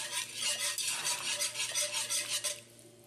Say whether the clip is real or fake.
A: real